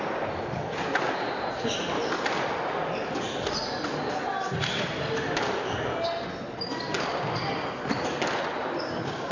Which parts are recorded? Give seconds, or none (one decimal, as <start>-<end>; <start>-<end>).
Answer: 0.0-2.0; 2.6-8.6